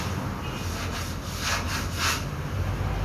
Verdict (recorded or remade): recorded